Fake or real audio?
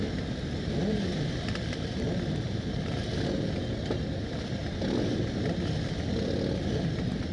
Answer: real